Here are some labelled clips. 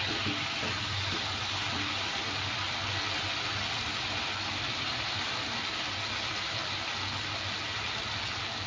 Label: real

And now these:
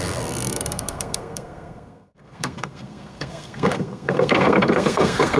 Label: fake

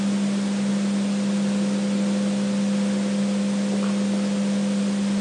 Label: real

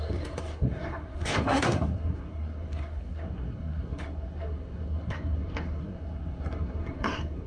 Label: fake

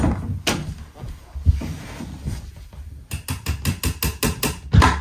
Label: real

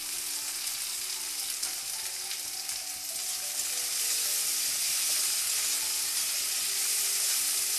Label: real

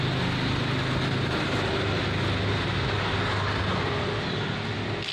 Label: real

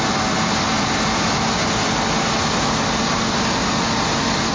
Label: real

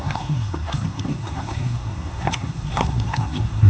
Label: fake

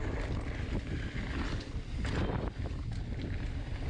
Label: real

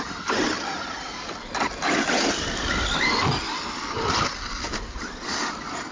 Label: real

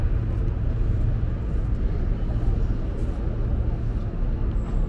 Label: real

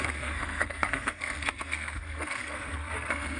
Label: fake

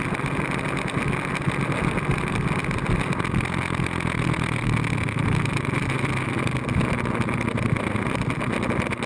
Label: real